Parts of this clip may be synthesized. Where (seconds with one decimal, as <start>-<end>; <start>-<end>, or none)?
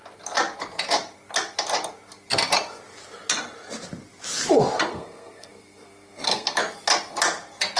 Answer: 4.9-6.6